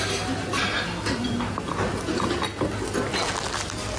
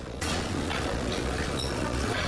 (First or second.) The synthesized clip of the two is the second